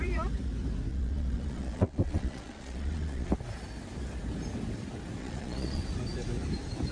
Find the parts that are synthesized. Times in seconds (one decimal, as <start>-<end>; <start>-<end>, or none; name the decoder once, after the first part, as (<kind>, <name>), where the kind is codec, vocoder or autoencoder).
0.9-3.3 (vocoder, Vocos); 5.2-5.8